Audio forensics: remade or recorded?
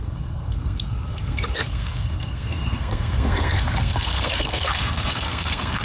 remade